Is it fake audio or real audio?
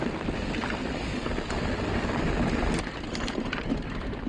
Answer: fake